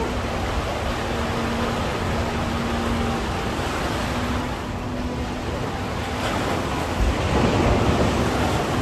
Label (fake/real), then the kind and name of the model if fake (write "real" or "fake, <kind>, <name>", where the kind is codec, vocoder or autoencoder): real